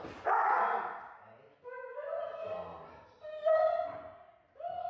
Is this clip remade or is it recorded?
recorded